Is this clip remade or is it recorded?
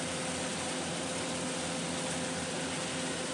recorded